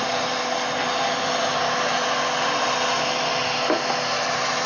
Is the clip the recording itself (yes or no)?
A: yes